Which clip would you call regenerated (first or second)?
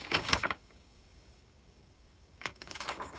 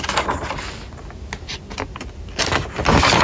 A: first